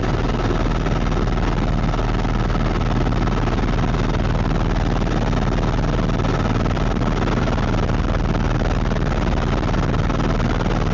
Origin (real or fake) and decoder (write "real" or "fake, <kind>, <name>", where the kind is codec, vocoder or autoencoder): real